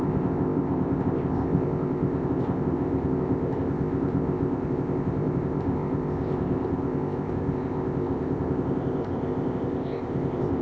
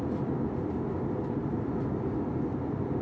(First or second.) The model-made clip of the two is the first